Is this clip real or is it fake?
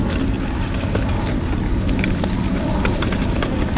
real